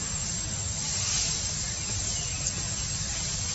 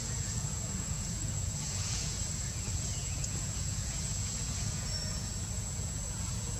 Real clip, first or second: first